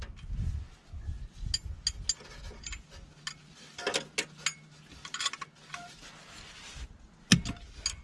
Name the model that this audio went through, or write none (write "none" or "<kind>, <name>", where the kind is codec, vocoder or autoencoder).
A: none